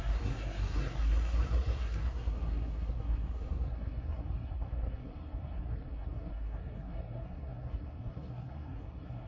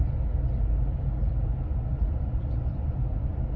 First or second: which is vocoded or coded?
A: first